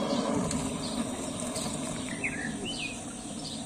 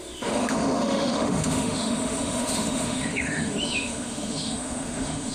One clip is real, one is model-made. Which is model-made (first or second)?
second